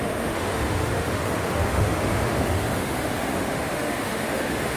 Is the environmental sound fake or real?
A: fake